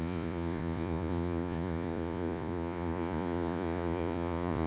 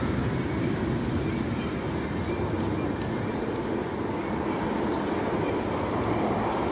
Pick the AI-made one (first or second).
first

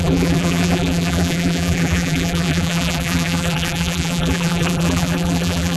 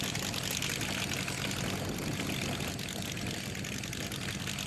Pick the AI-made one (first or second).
first